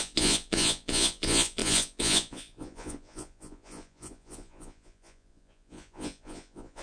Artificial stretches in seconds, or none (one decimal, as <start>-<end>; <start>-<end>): 0.0-6.8